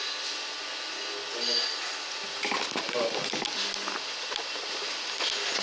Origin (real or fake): real